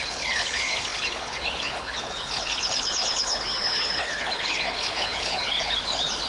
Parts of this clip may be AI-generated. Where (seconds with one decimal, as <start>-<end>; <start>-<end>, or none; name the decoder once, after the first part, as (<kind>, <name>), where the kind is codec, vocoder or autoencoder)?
0.0-6.3 (codec, HILCodec)